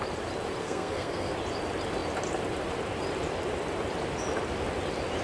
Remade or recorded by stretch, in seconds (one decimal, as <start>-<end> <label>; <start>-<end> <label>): 0.0-0.6 recorded; 0.6-1.3 remade; 1.3-5.2 recorded